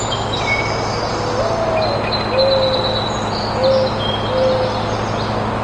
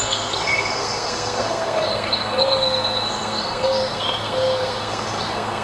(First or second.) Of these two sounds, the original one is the first